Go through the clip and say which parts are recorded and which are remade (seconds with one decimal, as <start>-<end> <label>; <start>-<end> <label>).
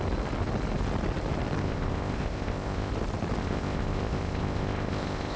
0.0-1.6 recorded; 1.6-2.9 remade; 2.9-3.4 recorded; 3.4-5.4 remade